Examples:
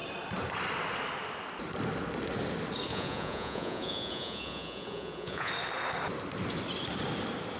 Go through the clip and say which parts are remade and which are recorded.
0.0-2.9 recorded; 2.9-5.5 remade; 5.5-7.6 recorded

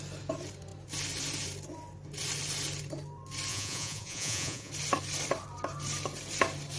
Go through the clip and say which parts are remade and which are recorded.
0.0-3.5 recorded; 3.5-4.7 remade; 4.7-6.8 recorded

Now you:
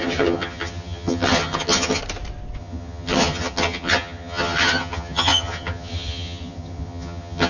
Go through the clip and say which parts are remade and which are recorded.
0.0-2.0 remade; 2.0-2.6 recorded; 2.6-7.5 remade

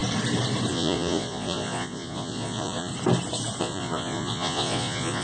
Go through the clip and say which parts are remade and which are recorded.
0.0-0.7 recorded; 0.7-2.9 remade; 2.9-3.6 recorded; 3.6-5.2 remade